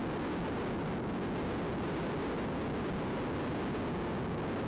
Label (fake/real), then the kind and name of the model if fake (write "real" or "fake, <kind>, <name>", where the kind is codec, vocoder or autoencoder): real